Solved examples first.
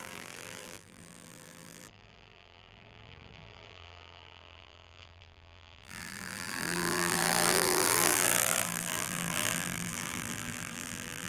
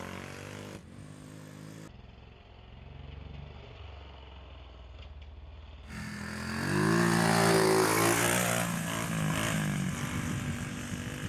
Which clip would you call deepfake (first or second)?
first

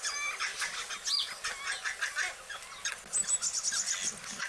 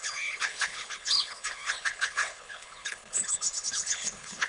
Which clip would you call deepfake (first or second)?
second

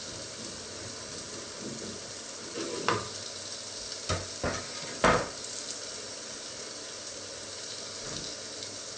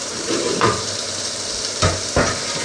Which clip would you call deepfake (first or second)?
second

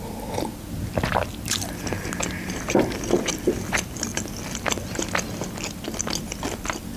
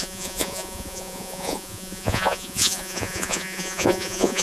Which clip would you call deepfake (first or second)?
second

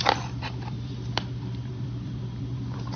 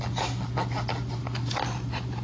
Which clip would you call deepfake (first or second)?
first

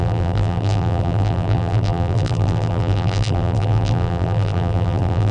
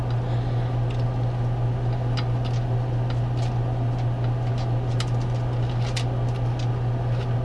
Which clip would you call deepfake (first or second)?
first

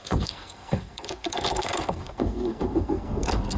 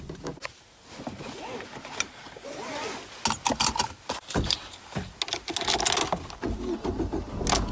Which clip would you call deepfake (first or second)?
first